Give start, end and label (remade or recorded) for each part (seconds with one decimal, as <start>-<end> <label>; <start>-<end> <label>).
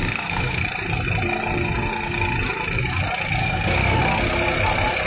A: 0.0-0.6 remade; 0.6-3.4 recorded; 3.4-4.0 remade; 4.0-5.1 recorded